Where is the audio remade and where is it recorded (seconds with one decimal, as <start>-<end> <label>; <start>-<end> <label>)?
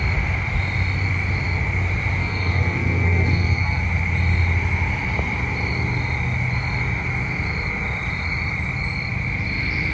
0.0-2.2 recorded; 2.2-3.8 remade; 3.8-9.9 recorded